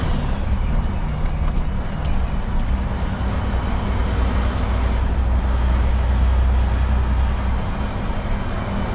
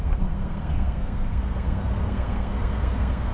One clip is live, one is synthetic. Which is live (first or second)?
first